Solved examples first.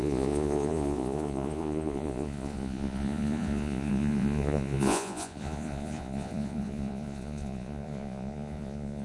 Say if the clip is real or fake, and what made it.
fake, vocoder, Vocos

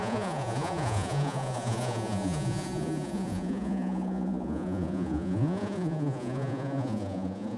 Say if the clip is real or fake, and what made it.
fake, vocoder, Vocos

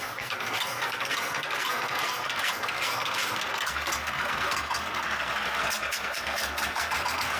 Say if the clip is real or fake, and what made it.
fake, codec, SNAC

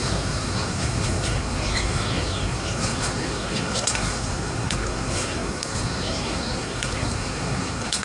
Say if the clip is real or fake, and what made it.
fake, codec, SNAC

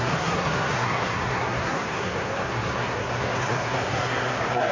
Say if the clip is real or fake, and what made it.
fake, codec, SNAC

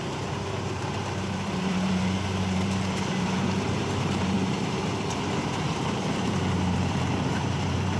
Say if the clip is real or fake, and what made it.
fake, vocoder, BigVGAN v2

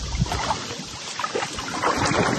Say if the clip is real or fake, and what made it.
real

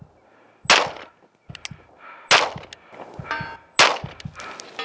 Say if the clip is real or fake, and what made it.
real